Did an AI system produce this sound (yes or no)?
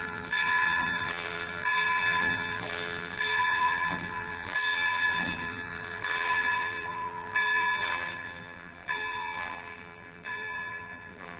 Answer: yes